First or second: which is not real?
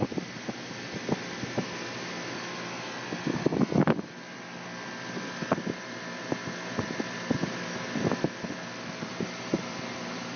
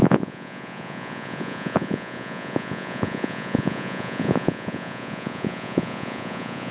second